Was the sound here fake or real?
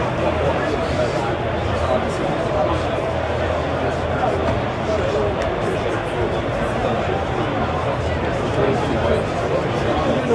real